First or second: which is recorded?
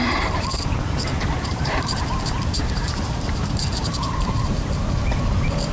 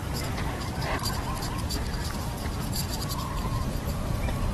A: second